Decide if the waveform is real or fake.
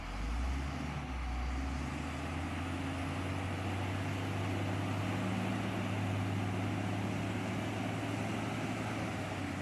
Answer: real